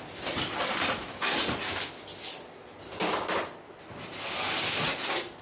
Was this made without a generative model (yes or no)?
yes